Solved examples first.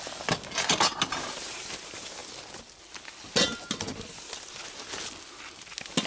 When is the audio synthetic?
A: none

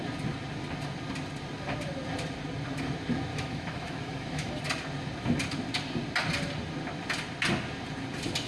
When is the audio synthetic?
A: 3.3-4.6

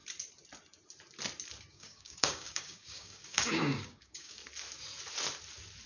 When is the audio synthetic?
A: 1.7-4.4

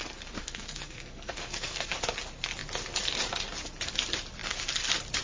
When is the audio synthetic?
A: 0.4-1.9

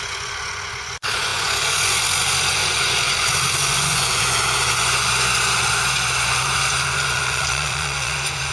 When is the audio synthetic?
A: 0.0-8.5

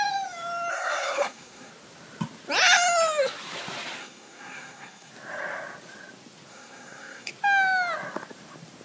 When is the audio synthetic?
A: 0.7-1.7; 4.0-5.1; 6.5-7.3

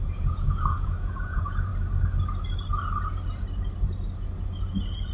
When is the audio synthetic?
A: 0.0-1.7